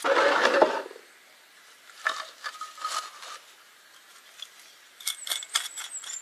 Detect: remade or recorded recorded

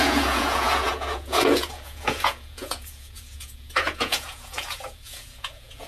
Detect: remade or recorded remade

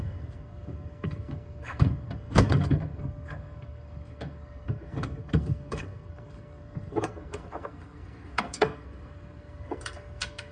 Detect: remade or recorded remade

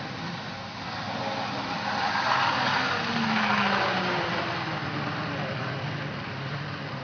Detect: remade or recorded recorded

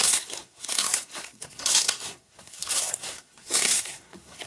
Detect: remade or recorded remade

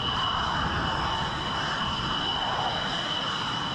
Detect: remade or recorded recorded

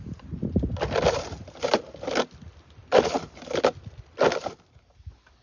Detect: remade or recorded recorded